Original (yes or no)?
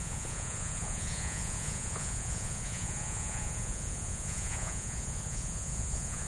no